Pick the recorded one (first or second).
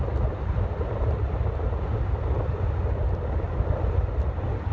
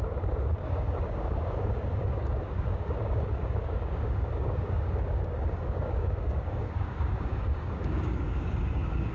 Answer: first